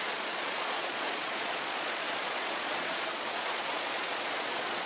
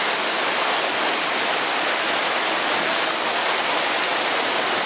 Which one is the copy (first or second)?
first